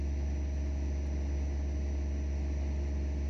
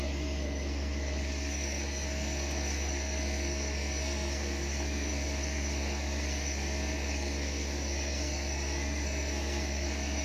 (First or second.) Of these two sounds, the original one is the first